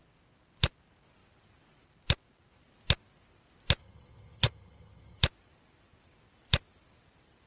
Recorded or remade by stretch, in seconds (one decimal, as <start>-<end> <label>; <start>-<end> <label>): 0.0-3.8 recorded; 3.8-5.2 remade; 5.2-7.5 recorded

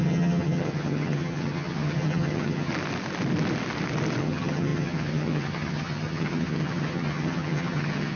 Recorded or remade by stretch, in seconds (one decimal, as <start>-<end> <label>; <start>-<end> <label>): 0.0-2.7 remade; 2.7-4.2 recorded; 4.2-8.2 remade

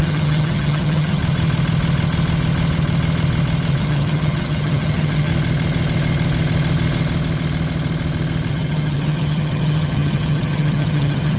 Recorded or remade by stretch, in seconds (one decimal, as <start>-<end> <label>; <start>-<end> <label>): 0.0-1.2 remade; 1.2-3.8 recorded; 3.8-5.3 remade; 5.3-8.5 recorded; 8.5-11.4 remade

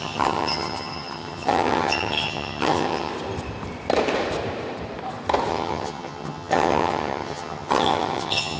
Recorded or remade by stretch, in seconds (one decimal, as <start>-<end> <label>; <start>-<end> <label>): 0.0-3.1 remade; 3.1-5.5 recorded; 5.5-8.6 remade

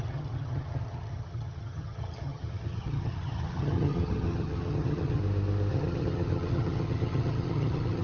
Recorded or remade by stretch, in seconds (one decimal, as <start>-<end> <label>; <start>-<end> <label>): 0.0-5.2 remade; 5.2-5.7 recorded; 5.7-8.0 remade

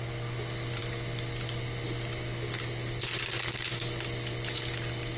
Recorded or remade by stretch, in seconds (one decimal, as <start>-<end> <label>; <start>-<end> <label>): 0.0-5.2 recorded

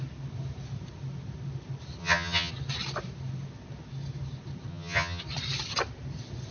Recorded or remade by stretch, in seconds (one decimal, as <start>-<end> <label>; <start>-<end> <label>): 0.0-2.0 recorded; 2.0-2.5 remade; 2.5-4.7 recorded; 4.7-5.2 remade; 5.2-6.5 recorded